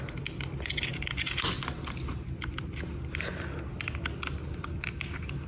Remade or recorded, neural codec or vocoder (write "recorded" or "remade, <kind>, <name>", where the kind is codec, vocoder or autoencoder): recorded